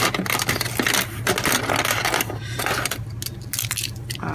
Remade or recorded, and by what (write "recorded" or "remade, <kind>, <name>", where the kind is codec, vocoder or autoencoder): recorded